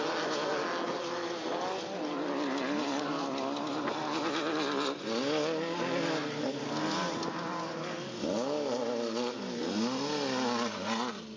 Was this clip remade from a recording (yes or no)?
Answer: no